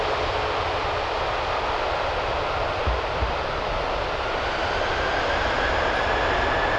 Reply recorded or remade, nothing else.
recorded